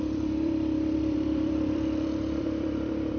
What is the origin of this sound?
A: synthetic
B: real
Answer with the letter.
A